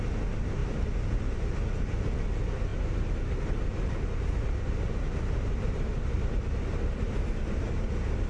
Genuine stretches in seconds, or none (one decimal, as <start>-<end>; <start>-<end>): 0.0-2.7; 7.7-8.3